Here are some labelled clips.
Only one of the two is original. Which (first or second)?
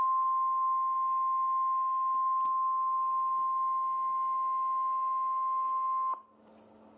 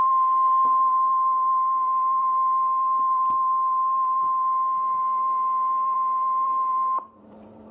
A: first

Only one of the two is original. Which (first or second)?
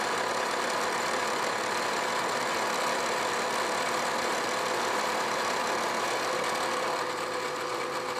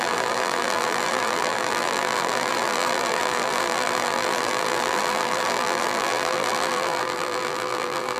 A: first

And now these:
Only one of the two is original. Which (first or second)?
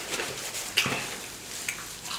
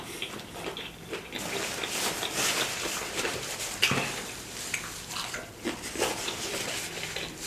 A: first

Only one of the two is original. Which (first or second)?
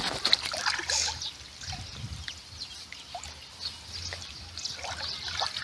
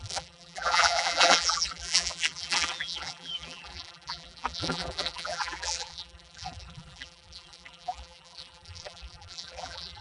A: first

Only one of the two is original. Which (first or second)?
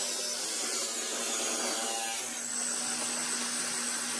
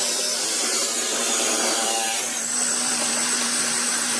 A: first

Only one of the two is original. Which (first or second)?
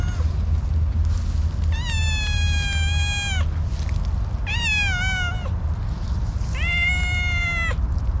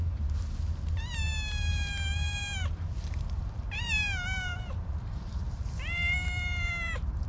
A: first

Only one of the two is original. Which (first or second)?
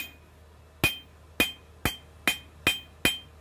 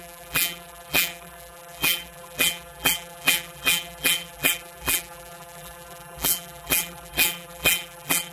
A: first